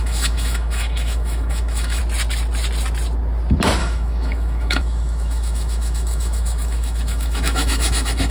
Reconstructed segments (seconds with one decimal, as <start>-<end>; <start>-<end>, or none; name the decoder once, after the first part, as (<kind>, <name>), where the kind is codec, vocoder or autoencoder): 0.0-2.0 (autoencoder, DAC-VAE); 3.8-8.3